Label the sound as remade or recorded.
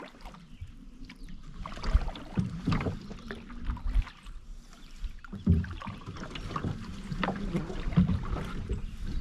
recorded